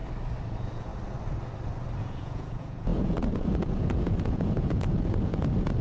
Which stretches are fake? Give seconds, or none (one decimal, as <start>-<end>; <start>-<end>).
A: 0.5-0.9; 2.0-5.8